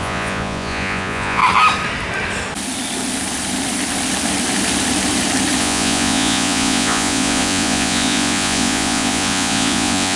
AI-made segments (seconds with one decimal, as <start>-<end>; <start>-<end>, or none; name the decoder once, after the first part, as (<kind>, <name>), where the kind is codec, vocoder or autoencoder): 0.0-1.4 (vocoder, Vocos); 5.6-10.2